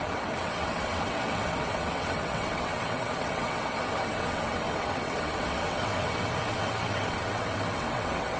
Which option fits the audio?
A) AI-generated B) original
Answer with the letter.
A